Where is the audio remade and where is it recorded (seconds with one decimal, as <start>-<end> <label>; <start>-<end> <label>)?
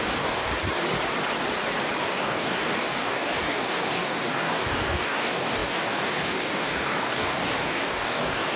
0.0-0.5 remade; 0.5-2.0 recorded; 2.0-8.6 remade